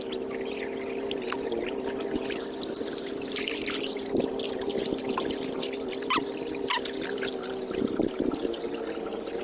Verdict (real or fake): real